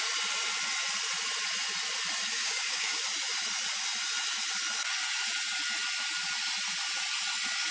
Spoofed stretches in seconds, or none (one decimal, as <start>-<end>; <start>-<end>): 2.3-3.0